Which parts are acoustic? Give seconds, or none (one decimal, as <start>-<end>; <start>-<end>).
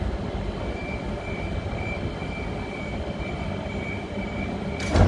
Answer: 0.0-5.1